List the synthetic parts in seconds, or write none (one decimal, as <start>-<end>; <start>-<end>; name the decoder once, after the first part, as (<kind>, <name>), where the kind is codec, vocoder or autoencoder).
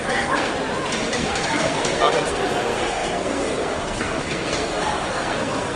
0.0-0.5 (codec, SNAC); 1.1-5.8